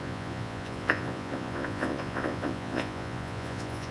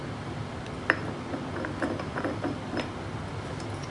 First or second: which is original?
second